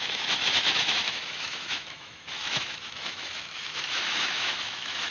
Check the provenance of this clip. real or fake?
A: fake